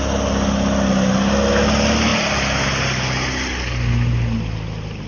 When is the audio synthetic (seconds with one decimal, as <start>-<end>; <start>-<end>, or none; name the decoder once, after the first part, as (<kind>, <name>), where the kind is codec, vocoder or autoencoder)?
none